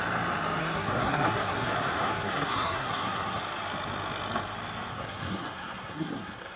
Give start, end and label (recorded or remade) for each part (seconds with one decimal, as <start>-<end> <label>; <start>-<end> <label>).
0.0-0.6 recorded; 0.6-3.4 remade; 3.4-4.9 recorded; 4.9-6.6 remade